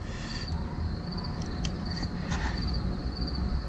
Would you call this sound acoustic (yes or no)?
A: yes